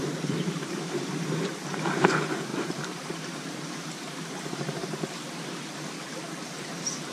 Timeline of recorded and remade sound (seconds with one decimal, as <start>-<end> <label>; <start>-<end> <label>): 0.0-2.5 remade; 2.5-6.6 recorded; 6.6-7.1 remade